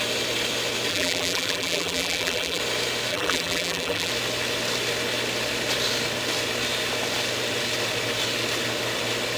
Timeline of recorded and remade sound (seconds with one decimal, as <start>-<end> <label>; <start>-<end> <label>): 0.0-0.9 recorded; 0.9-2.6 remade; 2.6-3.1 recorded; 3.1-4.1 remade; 4.1-9.4 recorded